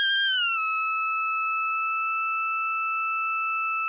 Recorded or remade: recorded